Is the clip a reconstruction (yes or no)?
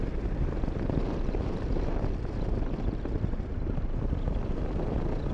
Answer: no